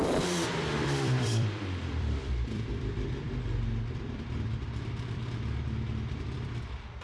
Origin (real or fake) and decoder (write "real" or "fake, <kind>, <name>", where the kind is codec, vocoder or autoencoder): fake, vocoder, BigVGAN v2